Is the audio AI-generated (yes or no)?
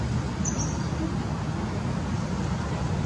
no